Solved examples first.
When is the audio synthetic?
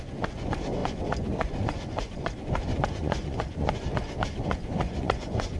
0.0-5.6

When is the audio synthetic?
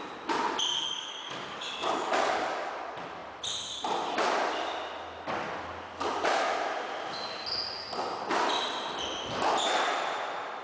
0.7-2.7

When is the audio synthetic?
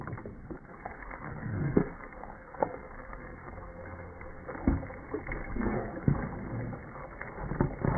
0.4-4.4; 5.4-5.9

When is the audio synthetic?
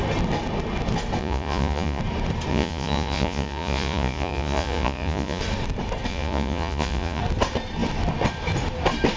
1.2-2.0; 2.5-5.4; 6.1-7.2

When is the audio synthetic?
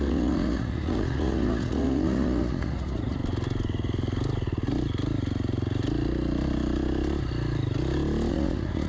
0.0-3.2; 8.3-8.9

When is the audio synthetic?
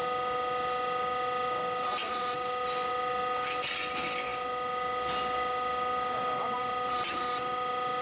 none